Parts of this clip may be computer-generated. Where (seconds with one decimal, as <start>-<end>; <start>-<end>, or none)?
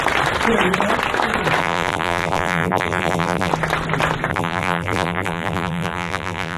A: 1.6-3.5; 4.3-6.6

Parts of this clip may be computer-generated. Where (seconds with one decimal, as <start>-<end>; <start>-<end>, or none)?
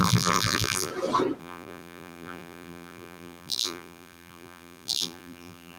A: 0.0-0.9; 1.4-5.8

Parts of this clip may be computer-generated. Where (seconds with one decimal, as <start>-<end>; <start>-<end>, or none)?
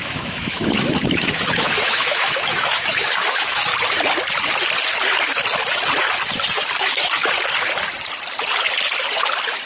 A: 0.0-3.7; 6.8-7.2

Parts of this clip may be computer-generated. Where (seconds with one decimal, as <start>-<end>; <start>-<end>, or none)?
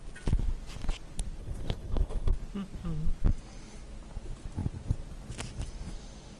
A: 1.4-2.3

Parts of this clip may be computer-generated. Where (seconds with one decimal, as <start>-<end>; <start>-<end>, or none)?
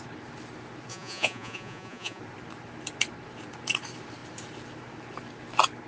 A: 0.9-2.2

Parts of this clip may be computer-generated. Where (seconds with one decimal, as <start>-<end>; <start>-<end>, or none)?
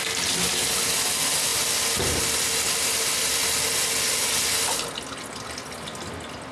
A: none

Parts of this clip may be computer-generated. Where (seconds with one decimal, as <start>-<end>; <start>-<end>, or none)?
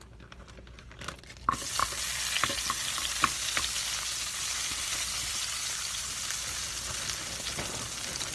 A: 1.8-6.7